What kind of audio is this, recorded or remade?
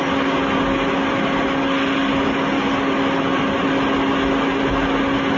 recorded